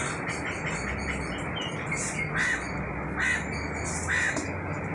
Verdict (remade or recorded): recorded